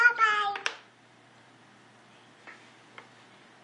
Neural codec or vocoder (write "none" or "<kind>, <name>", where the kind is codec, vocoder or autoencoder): none